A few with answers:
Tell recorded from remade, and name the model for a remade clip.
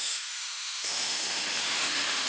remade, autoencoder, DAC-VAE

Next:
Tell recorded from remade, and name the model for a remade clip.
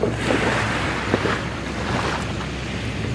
recorded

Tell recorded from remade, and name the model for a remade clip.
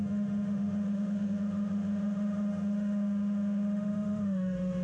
remade, autoencoder, DAC-VAE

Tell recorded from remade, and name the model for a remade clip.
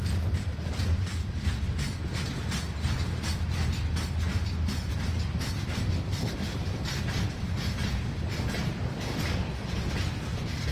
recorded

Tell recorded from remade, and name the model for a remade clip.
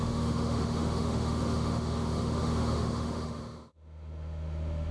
remade, autoencoder, DAC-VAE